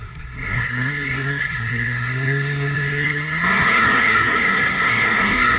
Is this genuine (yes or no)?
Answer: no